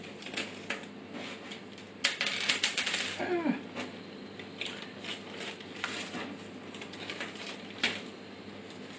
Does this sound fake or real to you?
real